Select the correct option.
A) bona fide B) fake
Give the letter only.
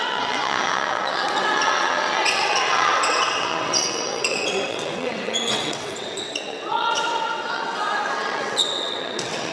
B